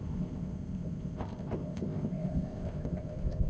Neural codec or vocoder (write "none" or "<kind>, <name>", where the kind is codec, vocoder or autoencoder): codec, ZipCodec